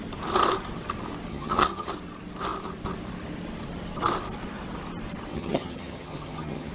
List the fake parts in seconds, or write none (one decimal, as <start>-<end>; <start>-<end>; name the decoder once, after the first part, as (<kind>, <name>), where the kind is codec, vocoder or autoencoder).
1.3-1.9 (vocoder, HiFi-GAN); 5.3-6.7